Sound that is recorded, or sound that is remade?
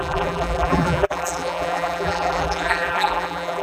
remade